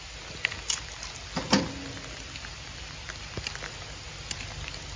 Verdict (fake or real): real